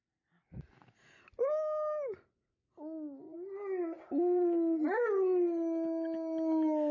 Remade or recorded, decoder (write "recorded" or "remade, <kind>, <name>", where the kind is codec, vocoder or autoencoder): recorded